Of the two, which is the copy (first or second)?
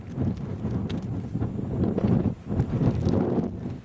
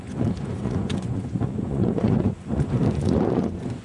second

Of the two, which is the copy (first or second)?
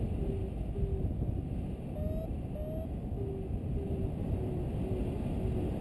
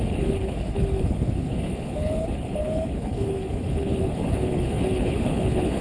second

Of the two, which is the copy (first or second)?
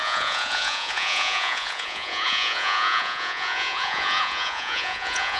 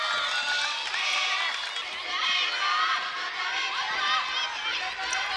first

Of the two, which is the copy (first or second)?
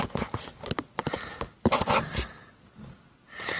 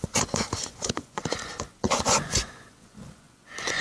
second